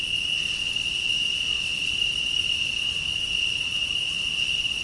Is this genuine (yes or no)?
no